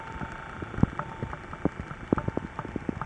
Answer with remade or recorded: recorded